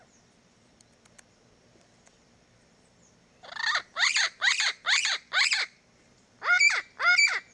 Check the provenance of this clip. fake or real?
fake